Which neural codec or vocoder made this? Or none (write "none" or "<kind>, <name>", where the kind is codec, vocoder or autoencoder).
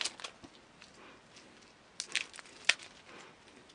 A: none